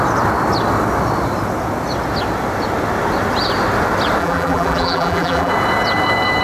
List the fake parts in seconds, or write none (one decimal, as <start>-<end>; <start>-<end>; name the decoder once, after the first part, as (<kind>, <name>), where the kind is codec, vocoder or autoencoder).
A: 4.2-5.5 (vocoder, BigVGAN v2)